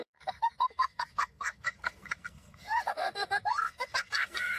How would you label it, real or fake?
fake